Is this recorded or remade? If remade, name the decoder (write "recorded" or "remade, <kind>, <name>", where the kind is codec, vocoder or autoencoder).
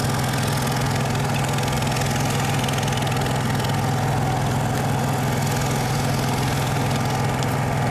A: recorded